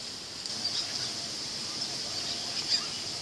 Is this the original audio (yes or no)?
yes